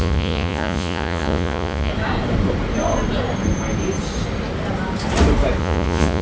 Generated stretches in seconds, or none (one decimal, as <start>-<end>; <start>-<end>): 0.0-1.9; 5.6-6.2